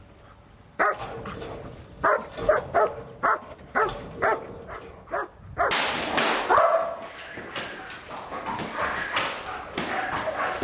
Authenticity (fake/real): real